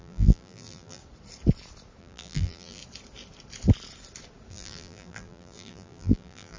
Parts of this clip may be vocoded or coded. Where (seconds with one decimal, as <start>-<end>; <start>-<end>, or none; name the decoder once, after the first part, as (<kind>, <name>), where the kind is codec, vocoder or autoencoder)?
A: 0.0-1.0 (vocoder, BigVGAN v2); 2.0-2.8; 4.5-6.6